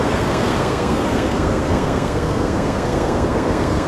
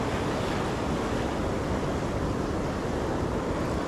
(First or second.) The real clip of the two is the second